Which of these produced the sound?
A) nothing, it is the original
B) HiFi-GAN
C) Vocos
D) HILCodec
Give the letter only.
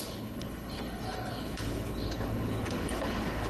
D